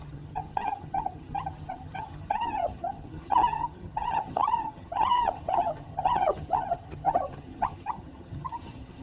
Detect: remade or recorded remade